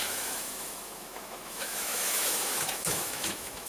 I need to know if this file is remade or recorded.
remade